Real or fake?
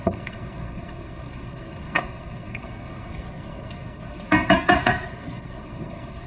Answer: fake